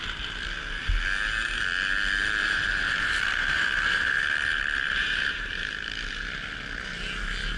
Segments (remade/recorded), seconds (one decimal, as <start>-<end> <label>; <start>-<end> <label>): 0.0-2.4 recorded; 2.4-5.6 remade; 5.6-7.6 recorded